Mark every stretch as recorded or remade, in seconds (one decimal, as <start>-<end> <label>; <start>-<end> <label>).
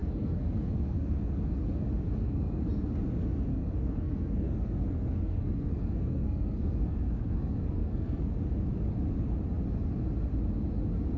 0.0-1.2 remade; 1.2-2.1 recorded; 2.1-2.6 remade; 2.6-3.5 recorded; 3.5-8.4 remade; 8.4-11.2 recorded